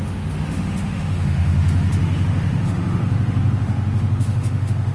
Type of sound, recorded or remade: remade